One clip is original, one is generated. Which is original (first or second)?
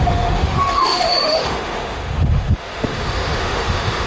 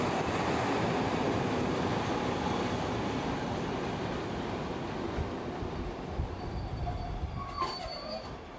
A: second